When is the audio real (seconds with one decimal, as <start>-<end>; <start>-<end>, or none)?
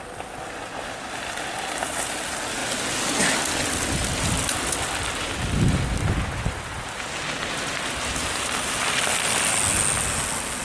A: 0.0-10.6